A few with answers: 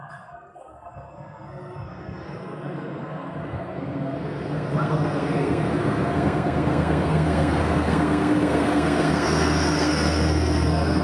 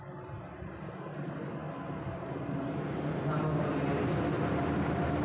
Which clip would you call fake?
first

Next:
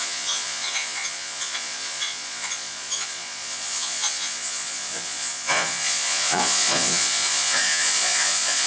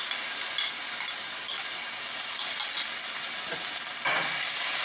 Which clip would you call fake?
first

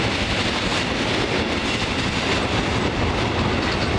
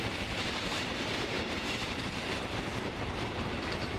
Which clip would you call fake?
second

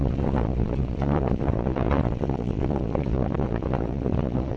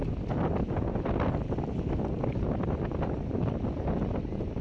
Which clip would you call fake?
first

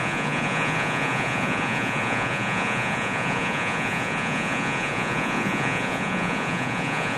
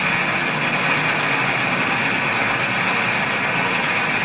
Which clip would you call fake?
first